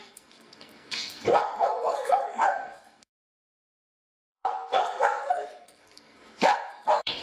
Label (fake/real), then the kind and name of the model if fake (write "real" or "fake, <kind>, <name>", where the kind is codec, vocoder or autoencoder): fake, codec, SNAC